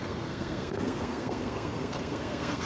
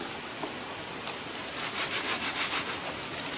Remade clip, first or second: first